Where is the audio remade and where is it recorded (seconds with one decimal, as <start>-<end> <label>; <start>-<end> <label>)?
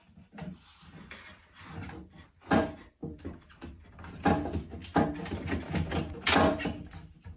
0.0-7.4 recorded